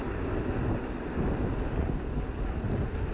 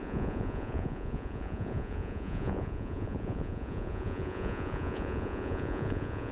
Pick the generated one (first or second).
second